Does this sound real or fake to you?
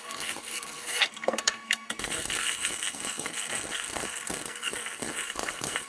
fake